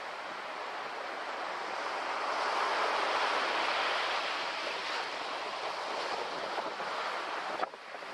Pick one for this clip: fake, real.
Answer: real